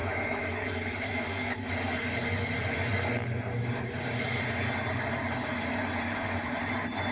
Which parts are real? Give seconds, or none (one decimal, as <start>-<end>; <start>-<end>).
1.7-7.1